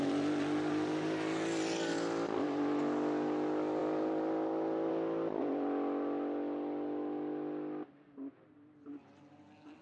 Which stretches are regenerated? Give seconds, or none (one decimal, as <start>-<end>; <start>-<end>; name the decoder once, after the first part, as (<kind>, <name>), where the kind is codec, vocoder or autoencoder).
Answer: 3.8-4.9 (vocoder, BigVGAN v2)

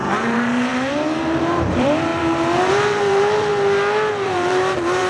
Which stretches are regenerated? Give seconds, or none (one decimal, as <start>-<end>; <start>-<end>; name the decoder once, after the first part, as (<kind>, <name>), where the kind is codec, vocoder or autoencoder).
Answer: 0.0-3.5 (vocoder, BigVGAN v2); 4.1-5.1

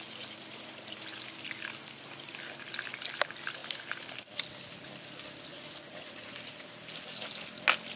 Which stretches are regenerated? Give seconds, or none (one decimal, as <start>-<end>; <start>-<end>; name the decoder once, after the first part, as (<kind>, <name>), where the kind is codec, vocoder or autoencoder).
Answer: 5.5-6.4 (vocoder, Vocos)

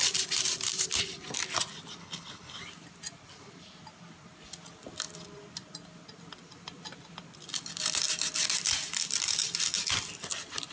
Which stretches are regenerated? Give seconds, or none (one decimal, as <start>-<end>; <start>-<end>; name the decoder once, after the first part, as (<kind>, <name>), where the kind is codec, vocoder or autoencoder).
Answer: 2.0-2.6 (codec, HILCodec)

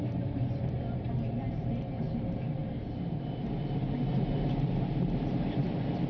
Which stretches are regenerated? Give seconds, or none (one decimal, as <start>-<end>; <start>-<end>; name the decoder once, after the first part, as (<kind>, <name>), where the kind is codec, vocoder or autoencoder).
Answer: 0.0-2.6 (vocoder, BigVGAN v2)